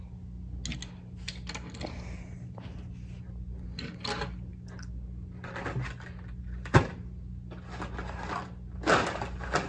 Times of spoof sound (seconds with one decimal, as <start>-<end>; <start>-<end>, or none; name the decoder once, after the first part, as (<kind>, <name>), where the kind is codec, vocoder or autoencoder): none